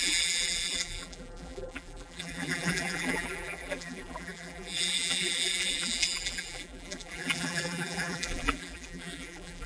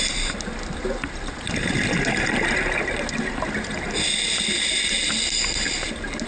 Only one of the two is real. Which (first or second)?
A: second